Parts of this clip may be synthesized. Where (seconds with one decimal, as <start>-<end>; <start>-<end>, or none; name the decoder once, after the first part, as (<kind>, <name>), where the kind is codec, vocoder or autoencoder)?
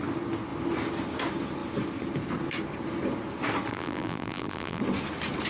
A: 3.7-4.8 (vocoder, BigVGAN v2)